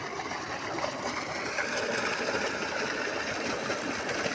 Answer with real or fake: real